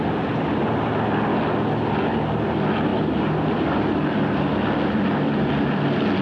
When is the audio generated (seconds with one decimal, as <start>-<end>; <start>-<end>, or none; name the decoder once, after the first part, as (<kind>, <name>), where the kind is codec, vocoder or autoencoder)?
none